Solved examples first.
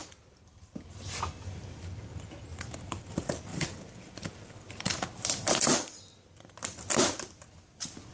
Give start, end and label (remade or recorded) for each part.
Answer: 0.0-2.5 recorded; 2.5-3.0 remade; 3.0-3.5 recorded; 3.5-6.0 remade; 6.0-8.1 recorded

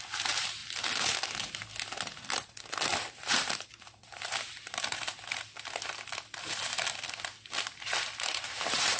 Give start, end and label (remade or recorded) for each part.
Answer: 0.0-0.6 remade; 0.6-3.1 recorded; 3.1-5.0 remade; 5.0-8.3 recorded; 8.3-9.0 remade

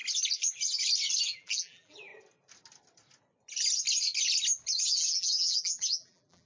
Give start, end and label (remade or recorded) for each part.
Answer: 0.0-1.2 recorded; 1.2-2.1 remade; 2.1-4.8 recorded; 4.8-6.5 remade

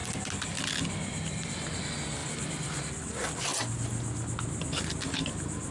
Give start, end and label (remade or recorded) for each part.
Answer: 0.0-2.2 recorded; 2.2-2.8 remade; 2.8-5.7 recorded

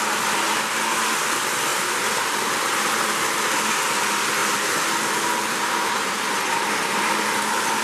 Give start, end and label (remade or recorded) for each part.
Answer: 0.0-1.7 recorded; 1.7-3.4 remade; 3.4-7.8 recorded